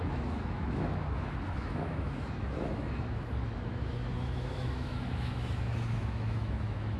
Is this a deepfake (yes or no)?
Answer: yes